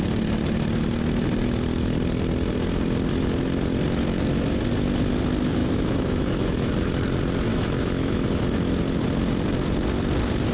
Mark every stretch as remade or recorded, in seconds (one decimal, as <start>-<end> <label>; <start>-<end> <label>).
0.0-5.6 recorded; 5.6-6.7 remade; 6.7-7.5 recorded; 7.5-8.4 remade; 8.4-10.5 recorded